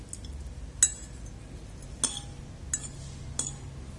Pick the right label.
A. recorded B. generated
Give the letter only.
A